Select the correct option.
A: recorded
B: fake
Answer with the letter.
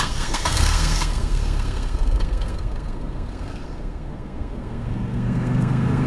B